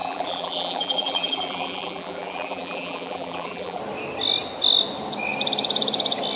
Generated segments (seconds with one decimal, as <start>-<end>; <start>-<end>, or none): 0.0-3.8